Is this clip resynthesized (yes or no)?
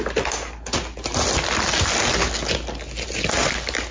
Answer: no